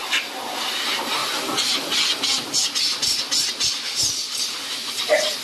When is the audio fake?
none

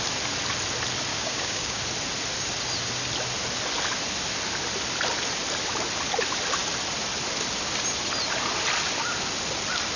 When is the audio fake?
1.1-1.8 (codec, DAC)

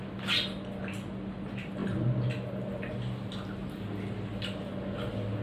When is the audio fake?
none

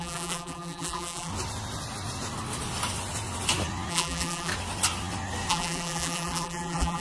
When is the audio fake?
0.0-1.3 (vocoder, BigVGAN v2); 3.9-4.5; 5.5-7.0